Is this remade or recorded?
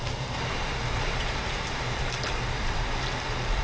remade